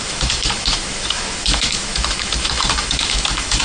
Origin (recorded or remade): remade